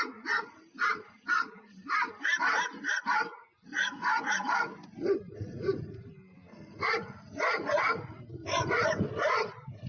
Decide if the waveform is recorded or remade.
recorded